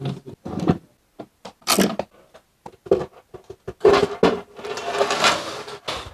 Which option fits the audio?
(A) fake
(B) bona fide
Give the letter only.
B